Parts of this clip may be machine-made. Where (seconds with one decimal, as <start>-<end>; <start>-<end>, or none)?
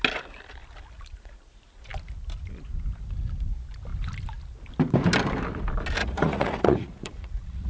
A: 6.0-7.7